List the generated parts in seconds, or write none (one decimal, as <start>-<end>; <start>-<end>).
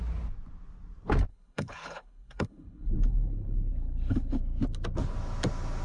1.3-4.4